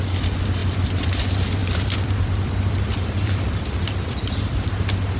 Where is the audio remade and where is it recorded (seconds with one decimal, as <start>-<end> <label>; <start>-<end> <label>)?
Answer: 0.0-0.6 recorded; 0.6-1.2 remade; 1.2-1.6 recorded; 1.6-4.7 remade; 4.7-5.2 recorded